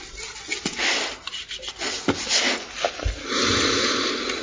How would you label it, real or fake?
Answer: real